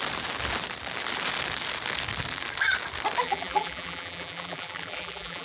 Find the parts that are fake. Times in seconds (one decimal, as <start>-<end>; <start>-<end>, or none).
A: 3.2-5.4